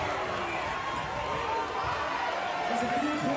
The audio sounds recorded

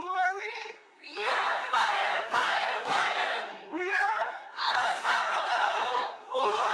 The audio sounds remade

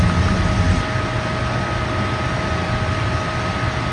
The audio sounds recorded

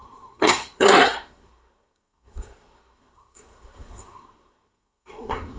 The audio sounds remade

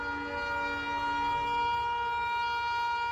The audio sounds recorded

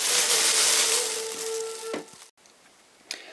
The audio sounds recorded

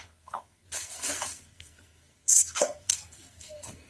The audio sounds remade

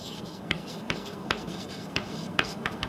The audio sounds remade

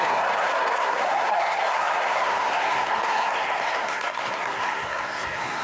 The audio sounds remade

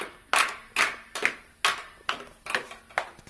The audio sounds recorded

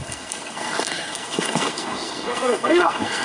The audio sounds remade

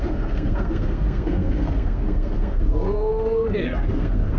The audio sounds remade